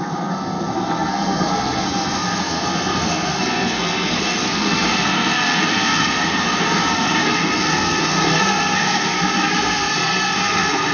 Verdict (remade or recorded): remade